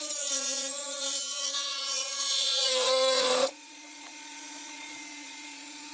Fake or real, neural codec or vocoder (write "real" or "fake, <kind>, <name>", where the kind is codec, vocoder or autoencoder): fake, vocoder, Vocos